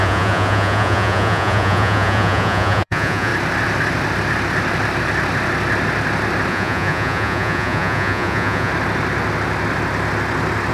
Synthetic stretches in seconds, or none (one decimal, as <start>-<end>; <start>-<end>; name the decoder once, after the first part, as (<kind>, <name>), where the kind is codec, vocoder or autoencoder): 0.0-3.3 (vocoder, Vocos); 6.5-8.7